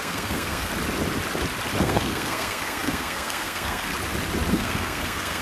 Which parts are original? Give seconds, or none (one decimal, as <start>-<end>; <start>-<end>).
0.7-1.8; 3.9-4.5